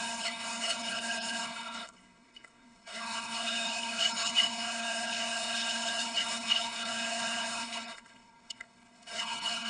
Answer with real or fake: fake